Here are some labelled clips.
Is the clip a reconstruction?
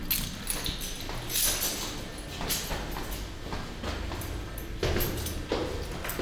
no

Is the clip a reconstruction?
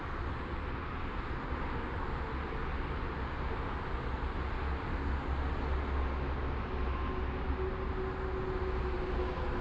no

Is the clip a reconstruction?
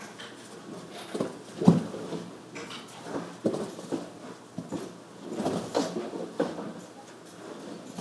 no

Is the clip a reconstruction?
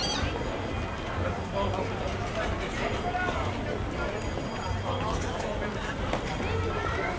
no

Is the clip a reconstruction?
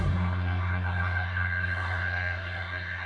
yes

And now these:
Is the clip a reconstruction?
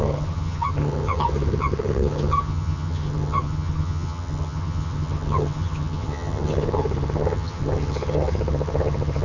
yes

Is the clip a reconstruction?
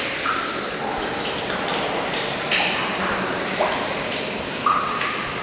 yes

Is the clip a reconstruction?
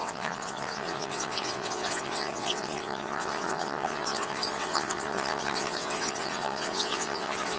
yes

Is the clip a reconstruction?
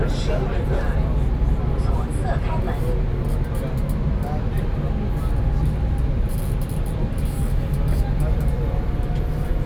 no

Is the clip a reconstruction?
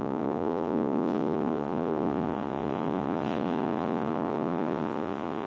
yes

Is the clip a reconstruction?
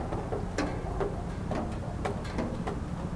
no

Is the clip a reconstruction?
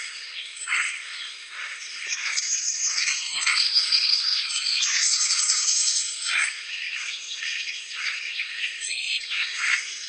yes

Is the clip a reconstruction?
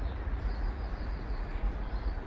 yes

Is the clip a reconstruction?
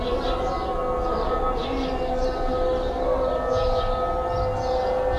no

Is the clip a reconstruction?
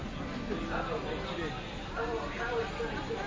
no